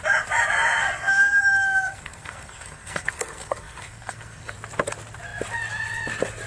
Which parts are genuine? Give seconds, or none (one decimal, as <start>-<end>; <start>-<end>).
0.0-0.8; 4.5-6.5

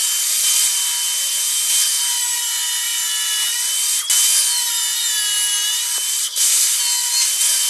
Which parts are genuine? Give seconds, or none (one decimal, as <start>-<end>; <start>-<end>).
0.0-6.2; 6.8-7.7

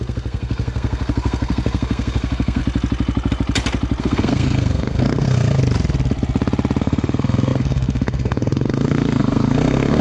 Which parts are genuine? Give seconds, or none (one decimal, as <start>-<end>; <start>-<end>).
2.6-4.0; 5.6-6.8

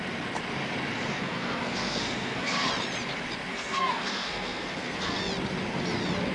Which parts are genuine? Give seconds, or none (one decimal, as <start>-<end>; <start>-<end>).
0.0-1.1; 2.7-3.5; 5.2-6.3

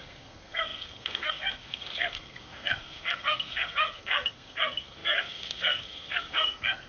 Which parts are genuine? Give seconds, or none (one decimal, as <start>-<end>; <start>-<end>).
none

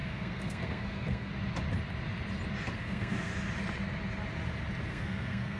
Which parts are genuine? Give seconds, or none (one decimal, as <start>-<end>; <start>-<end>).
1.3-2.7; 3.3-4.9

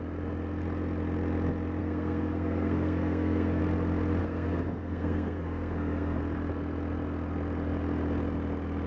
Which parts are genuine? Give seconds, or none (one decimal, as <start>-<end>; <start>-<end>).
0.0-1.8; 3.6-4.2; 6.2-8.9

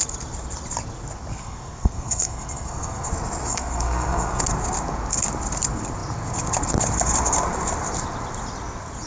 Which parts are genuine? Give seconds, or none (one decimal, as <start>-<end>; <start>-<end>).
0.0-1.3; 3.1-3.5; 4.4-9.1